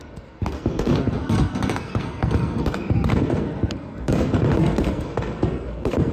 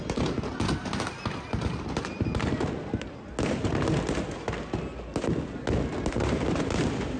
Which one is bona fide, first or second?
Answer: second